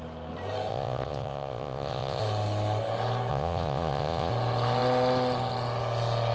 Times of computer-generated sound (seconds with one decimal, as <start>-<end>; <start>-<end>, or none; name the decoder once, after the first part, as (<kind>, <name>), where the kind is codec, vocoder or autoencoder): 0.7-2.2 (vocoder, Vocos); 3.3-4.3